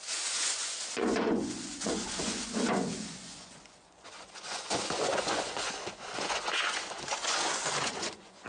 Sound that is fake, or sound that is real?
fake